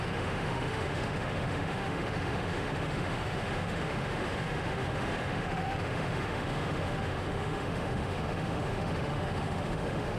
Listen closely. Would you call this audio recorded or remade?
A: remade